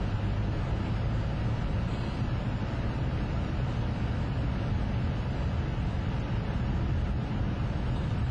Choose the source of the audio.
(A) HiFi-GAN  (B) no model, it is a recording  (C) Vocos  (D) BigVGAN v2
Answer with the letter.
B